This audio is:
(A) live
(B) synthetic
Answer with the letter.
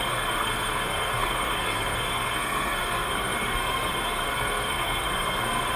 B